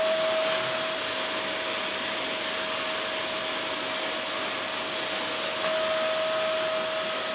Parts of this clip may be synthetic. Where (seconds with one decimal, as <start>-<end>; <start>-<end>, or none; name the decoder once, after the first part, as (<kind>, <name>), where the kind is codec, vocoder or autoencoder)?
none